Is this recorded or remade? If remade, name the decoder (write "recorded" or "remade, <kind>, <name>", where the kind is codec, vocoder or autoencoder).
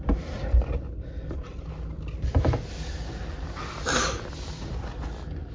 recorded